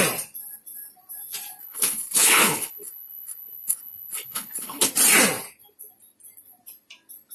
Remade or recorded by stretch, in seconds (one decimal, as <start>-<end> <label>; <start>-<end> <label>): 0.0-1.6 recorded; 1.6-4.9 remade; 4.9-7.3 recorded